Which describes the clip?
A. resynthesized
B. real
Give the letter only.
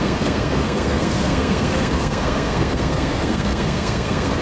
A